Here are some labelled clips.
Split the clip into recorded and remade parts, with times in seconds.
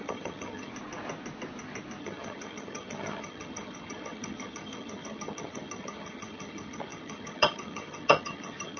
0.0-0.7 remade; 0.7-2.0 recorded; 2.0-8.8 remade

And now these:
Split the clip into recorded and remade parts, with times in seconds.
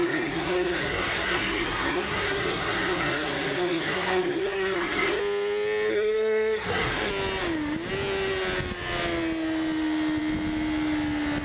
0.0-5.2 remade; 5.2-5.9 recorded; 5.9-7.1 remade; 7.1-11.4 recorded